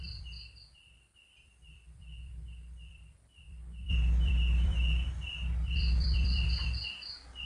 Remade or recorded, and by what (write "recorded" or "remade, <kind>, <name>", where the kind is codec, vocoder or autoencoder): remade, vocoder, BigVGAN v2